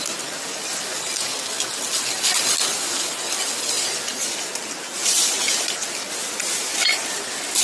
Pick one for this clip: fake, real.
real